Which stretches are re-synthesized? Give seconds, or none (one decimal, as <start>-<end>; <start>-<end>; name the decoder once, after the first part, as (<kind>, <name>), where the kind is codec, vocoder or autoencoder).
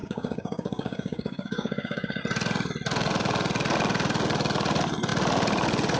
0.0-2.2 (codec, DAC)